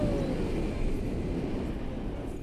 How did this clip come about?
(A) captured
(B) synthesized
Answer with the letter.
A